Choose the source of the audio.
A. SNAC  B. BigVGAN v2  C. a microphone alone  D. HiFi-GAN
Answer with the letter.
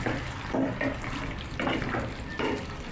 B